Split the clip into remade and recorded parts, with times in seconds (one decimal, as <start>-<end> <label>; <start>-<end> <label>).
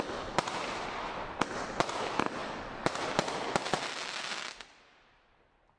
0.0-5.8 recorded